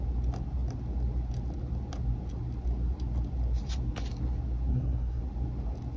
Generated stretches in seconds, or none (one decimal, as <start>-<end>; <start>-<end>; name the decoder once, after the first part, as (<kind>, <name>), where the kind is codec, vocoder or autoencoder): 4.7-5.2 (codec, SNAC)